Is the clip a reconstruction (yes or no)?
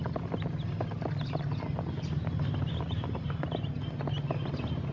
no